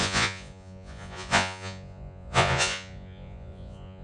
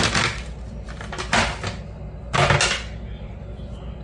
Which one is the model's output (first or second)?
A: first